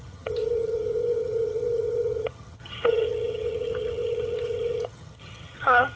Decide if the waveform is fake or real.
fake